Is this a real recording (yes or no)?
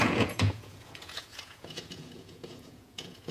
no